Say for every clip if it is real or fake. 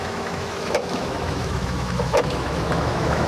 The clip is fake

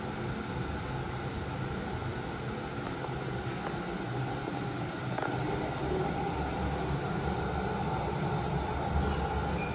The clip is real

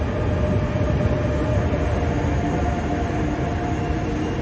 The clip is real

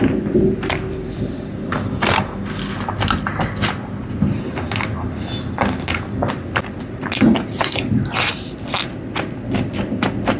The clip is real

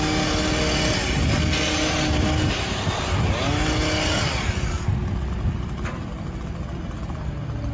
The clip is real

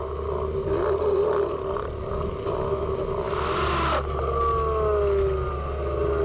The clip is real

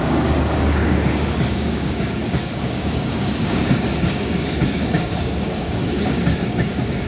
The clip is fake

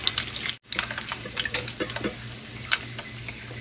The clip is real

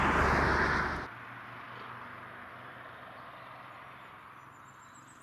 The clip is real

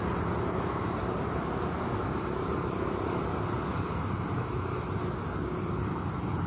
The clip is real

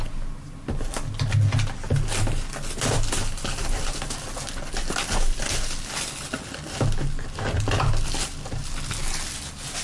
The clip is real